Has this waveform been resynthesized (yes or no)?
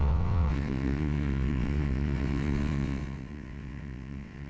yes